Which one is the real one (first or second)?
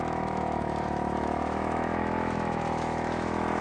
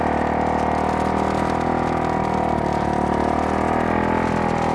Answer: second